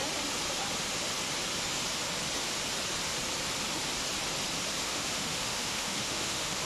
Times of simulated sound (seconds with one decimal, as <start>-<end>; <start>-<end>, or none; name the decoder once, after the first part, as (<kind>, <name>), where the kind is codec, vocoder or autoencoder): 4.8-6.6 (autoencoder, DAC-VAE)